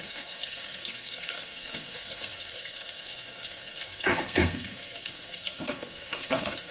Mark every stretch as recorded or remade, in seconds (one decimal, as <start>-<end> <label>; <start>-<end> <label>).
0.0-6.7 remade